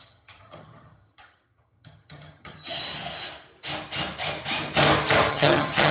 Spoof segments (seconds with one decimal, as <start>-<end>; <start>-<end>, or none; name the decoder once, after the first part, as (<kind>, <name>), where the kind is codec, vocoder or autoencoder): 0.0-2.8 (vocoder, HiFi-GAN); 5.3-5.9